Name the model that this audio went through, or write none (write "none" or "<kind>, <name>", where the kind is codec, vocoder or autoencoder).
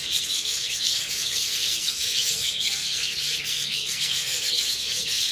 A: codec, SNAC